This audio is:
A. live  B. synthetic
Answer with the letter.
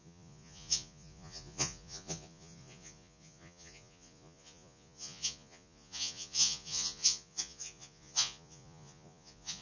B